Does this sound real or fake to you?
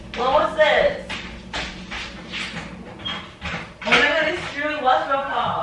real